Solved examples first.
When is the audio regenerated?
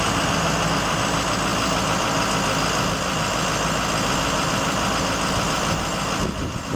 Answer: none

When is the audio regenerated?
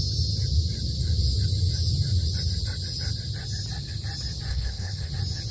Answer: 4.5-5.1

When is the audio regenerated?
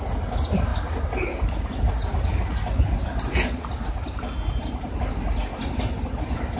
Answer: none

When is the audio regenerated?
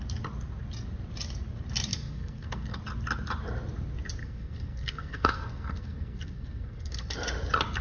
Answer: 1.9-2.8; 4.2-7.1